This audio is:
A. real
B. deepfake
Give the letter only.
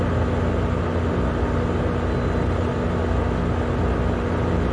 A